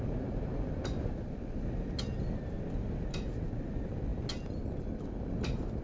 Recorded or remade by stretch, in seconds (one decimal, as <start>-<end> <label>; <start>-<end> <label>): 0.0-5.8 recorded